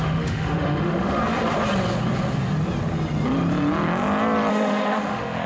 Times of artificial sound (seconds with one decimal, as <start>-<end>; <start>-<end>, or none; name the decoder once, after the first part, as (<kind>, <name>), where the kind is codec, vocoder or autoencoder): 0.0-1.2 (autoencoder, DAC-VAE); 4.5-5.5